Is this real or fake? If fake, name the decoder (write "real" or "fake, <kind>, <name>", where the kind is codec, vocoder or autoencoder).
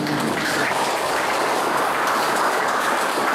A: fake, codec, DAC